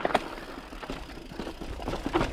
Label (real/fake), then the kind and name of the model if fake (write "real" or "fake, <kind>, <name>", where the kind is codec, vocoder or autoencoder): real